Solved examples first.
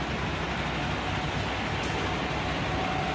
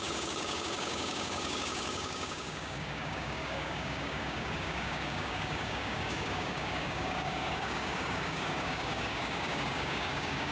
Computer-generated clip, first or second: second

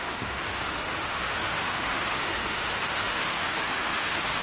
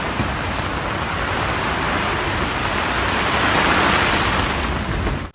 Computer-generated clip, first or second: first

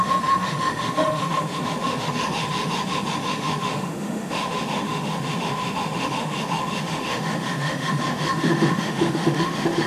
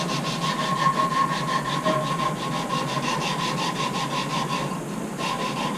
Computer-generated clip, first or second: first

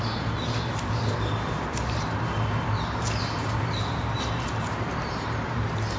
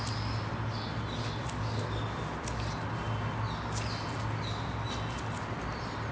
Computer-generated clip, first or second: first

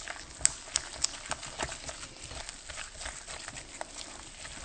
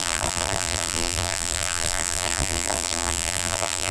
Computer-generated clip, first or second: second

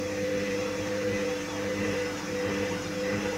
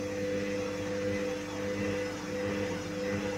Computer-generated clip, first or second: first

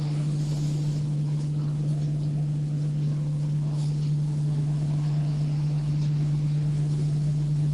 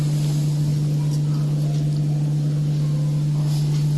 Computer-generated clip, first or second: first